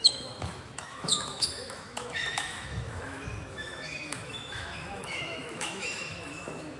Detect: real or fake fake